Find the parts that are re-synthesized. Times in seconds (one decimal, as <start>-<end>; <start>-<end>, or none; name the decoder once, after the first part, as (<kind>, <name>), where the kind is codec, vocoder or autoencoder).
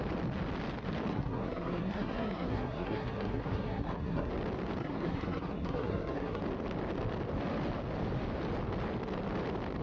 1.1-4.3 (codec, SNAC); 4.8-6.4